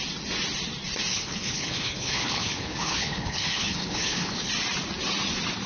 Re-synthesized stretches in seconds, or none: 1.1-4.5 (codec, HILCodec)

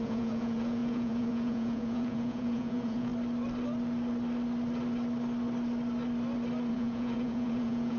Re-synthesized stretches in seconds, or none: 0.0-3.1 (vocoder, Vocos); 6.7-8.0

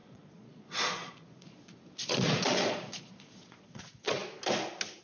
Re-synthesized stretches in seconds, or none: 0.0-4.2 (vocoder, Vocos)

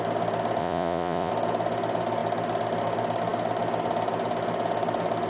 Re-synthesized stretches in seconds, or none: 0.6-1.3 (vocoder, Vocos)

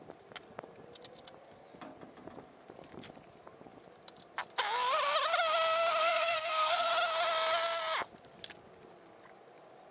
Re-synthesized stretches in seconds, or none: 6.0-6.9 (codec, SNAC)